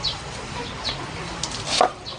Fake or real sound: fake